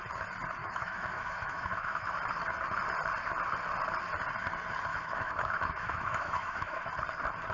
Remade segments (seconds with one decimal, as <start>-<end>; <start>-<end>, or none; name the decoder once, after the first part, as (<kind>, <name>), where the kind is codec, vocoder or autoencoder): 0.6-2.1 (autoencoder, DAC-VAE); 4.9-6.9